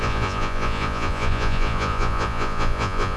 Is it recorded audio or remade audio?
remade